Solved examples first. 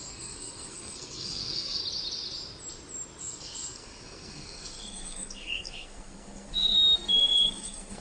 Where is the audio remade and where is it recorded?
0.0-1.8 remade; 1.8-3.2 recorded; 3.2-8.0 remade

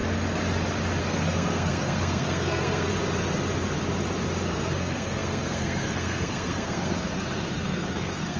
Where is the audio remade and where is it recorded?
0.0-1.0 recorded; 1.0-2.9 remade; 2.9-4.5 recorded; 4.5-8.4 remade

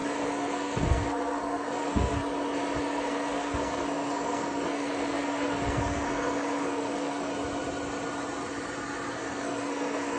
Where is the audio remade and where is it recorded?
0.0-2.2 remade; 2.2-2.8 recorded; 2.8-7.3 remade; 7.3-9.1 recorded; 9.1-10.2 remade

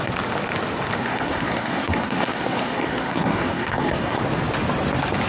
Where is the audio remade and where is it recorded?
0.0-1.0 recorded; 1.0-4.2 remade; 4.2-5.3 recorded

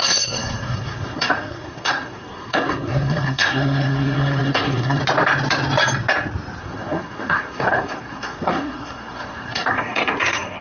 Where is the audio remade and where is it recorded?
0.0-5.0 remade; 5.0-6.6 recorded; 6.6-10.6 remade

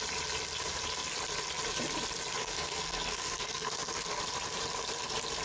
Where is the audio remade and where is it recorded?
0.0-2.4 recorded; 2.4-4.2 remade; 4.2-5.4 recorded